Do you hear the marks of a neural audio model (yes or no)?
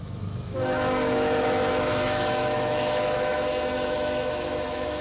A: yes